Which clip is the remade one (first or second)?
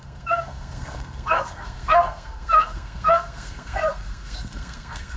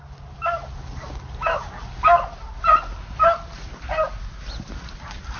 first